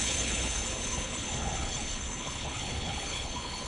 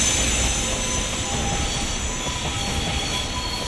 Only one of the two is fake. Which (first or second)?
first